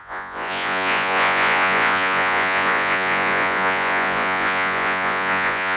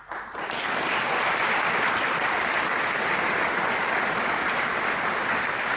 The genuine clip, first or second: second